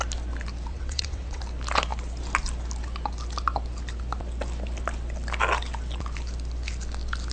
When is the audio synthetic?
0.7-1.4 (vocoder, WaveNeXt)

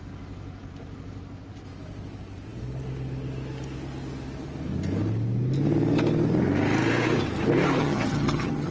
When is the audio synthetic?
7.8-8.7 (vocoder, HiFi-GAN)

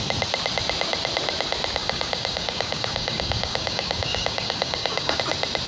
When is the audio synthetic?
1.8-5.2 (codec, DAC)

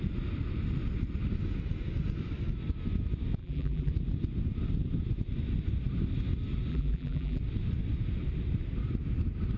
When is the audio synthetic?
3.4-3.9 (vocoder, BigVGAN v2); 6.7-7.4